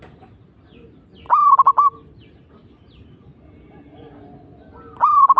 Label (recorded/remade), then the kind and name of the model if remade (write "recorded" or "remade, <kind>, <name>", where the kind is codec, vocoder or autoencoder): recorded